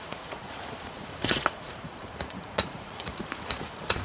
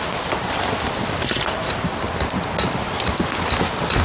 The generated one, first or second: first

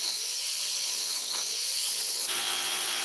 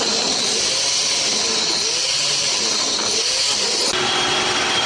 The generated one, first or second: first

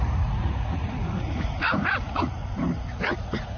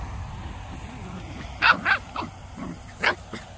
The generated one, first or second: first